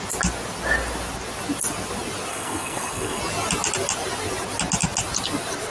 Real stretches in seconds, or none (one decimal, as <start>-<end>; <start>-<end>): 0.0-2.3; 3.2-5.7